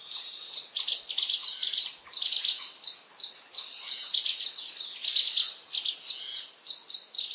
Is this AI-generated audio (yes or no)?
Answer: no